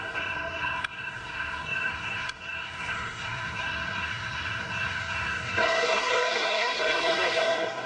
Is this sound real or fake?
fake